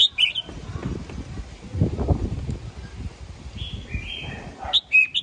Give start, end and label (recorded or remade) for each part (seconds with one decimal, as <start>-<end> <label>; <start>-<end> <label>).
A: 0.0-5.2 recorded